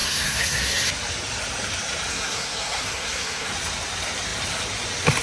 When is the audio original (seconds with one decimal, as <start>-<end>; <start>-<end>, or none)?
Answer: 0.9-2.1; 3.5-5.2